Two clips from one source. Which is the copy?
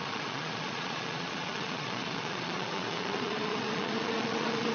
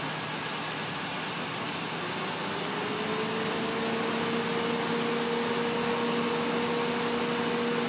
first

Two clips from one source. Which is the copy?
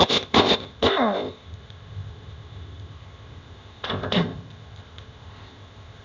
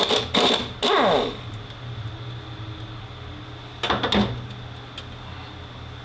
first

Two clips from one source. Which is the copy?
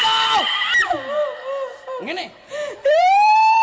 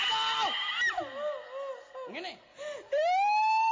first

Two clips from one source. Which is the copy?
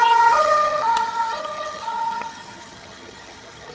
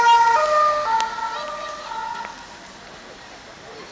first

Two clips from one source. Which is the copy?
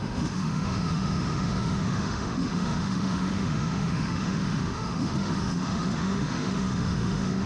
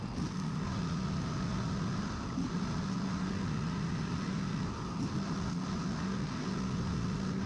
first